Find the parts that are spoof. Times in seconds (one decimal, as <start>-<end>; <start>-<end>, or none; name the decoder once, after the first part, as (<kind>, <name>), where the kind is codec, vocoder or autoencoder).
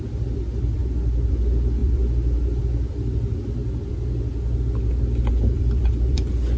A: 0.0-0.8 (vocoder, BigVGAN v2); 1.3-3.6; 5.3-6.6